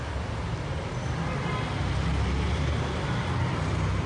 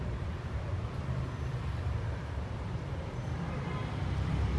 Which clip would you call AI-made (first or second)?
second